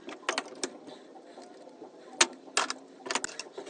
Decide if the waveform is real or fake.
real